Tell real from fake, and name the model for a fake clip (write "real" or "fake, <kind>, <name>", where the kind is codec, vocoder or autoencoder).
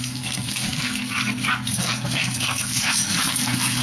fake, codec, SNAC